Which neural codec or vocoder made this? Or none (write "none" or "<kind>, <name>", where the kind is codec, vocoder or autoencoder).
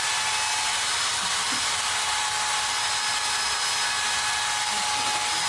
none